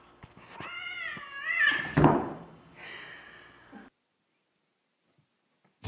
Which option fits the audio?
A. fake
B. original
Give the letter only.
B